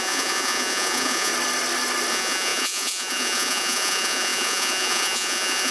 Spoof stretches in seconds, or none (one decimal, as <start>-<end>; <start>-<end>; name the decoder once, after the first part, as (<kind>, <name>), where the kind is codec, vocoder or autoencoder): 0.0-1.3 (vocoder, Vocos); 2.1-5.7